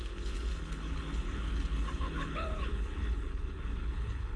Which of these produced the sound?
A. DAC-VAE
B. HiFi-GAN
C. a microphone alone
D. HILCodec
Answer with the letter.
D